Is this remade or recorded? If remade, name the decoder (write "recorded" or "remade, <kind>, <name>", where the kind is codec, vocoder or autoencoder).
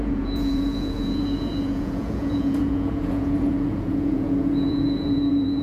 remade, vocoder, Vocos